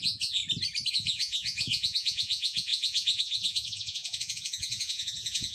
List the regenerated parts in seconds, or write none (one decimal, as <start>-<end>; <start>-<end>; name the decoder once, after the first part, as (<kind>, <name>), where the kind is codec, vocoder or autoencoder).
0.0-0.4 (vocoder, Vocos); 0.9-5.5